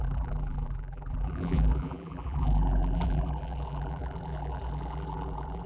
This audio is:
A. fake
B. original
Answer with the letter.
A